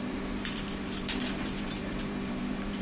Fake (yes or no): yes